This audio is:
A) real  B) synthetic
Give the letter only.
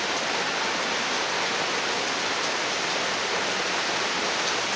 A